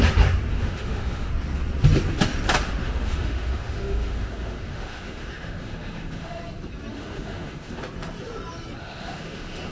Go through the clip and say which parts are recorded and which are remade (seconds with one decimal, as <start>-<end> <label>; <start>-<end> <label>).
0.0-0.5 recorded; 0.5-1.3 remade; 1.3-2.8 recorded; 2.8-6.4 remade; 6.4-6.9 recorded; 6.9-7.8 remade; 7.8-8.8 recorded; 8.8-9.7 remade